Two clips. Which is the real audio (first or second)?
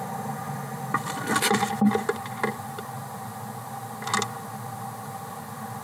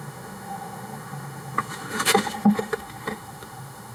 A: first